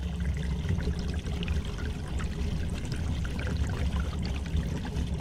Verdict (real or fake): real